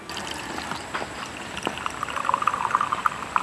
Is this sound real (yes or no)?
yes